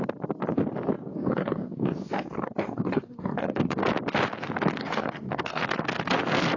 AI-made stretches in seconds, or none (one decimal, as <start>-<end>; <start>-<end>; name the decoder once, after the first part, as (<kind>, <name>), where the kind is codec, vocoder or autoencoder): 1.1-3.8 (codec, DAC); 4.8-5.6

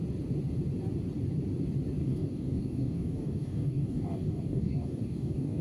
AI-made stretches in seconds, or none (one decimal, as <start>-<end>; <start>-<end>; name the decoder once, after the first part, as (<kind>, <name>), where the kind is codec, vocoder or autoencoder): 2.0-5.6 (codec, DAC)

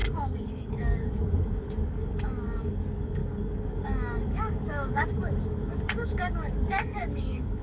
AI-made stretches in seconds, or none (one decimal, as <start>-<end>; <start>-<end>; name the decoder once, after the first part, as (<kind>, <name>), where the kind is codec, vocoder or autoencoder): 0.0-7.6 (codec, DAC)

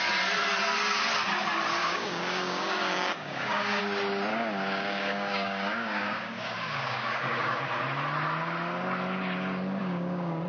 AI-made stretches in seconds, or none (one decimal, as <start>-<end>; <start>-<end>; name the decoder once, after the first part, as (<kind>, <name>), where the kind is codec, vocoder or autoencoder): 1.8-3.8 (codec, DAC); 4.3-7.6; 9.8-10.5

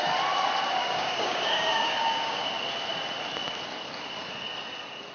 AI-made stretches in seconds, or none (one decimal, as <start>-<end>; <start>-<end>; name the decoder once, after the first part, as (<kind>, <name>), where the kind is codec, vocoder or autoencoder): 0.8-2.5 (codec, DAC)

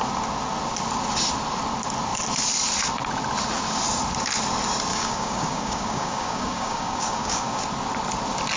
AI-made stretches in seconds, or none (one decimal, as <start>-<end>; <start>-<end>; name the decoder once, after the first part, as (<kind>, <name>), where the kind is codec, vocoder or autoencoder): 4.9-7.6 (codec, DAC)

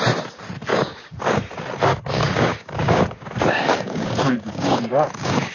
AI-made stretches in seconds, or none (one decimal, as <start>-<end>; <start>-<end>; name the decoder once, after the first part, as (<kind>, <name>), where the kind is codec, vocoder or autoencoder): 0.7-1.4 (codec, DAC); 1.9-5.5

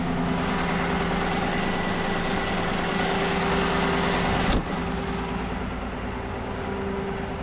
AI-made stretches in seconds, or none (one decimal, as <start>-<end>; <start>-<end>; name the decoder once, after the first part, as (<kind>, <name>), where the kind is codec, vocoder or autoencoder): 2.3-3.6 (codec, DAC)